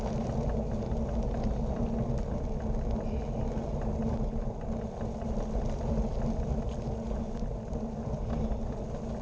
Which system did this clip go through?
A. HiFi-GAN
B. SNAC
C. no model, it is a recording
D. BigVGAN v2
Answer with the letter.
C